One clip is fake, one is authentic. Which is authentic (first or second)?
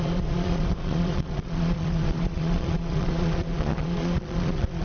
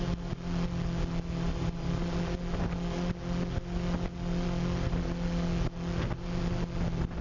second